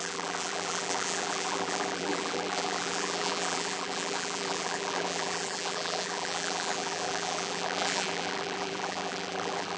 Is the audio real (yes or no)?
no